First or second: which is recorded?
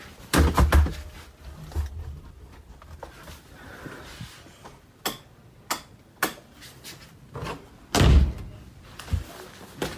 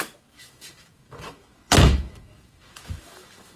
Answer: first